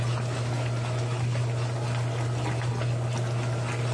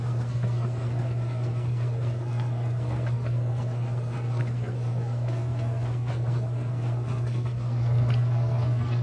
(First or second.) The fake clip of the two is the second